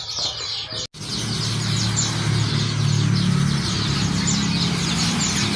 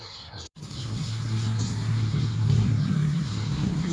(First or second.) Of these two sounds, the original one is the first